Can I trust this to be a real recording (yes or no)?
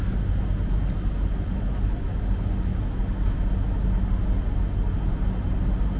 yes